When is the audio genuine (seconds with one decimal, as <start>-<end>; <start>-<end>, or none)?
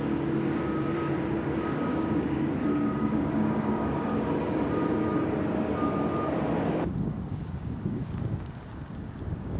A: 0.9-1.7; 4.1-6.6